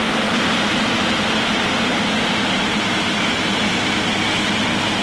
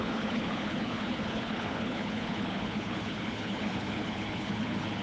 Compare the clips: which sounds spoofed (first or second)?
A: second